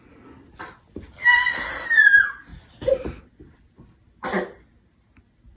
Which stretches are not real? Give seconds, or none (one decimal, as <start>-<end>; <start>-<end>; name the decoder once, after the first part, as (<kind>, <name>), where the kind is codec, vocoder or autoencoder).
2.5-3.2 (vocoder, BigVGAN v2)